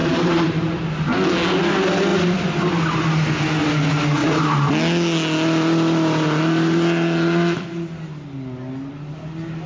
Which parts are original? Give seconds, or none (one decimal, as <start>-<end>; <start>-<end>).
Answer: 0.9-2.1; 2.7-4.2; 4.7-9.7